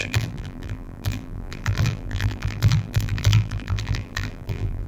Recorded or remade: remade